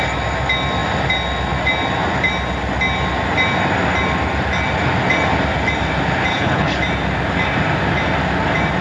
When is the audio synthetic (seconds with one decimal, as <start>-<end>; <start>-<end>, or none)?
6.3-6.8